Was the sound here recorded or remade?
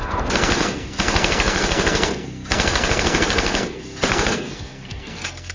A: remade